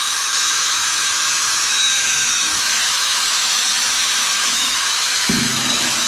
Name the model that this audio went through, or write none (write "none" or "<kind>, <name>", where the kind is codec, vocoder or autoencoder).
autoencoder, DAC-VAE